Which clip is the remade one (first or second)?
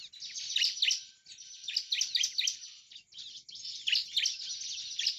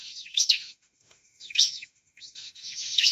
second